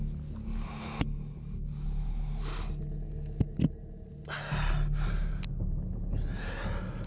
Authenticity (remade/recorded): recorded